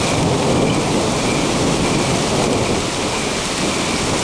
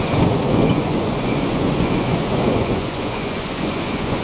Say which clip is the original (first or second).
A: first